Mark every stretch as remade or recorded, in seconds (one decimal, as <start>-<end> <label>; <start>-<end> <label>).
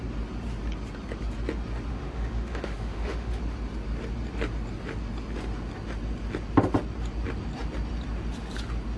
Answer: 0.0-1.9 recorded; 1.9-3.4 remade; 3.4-9.0 recorded